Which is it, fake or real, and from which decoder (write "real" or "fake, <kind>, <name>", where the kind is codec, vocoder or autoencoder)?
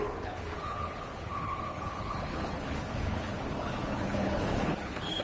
fake, codec, HILCodec